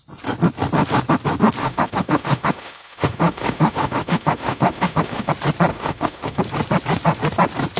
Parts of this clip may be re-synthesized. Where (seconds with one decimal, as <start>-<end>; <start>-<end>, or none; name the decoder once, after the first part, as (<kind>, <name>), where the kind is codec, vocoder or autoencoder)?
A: 1.6-5.3 (autoencoder, DAC-VAE); 5.7-6.4